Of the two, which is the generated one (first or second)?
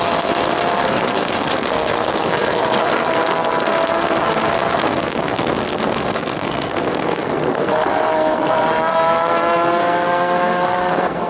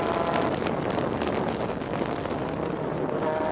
first